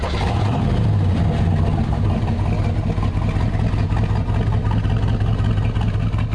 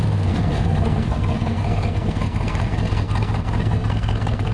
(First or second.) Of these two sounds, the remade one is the second